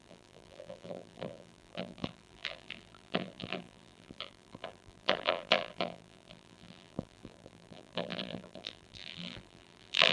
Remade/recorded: remade